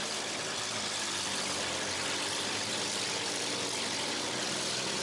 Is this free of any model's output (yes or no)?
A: no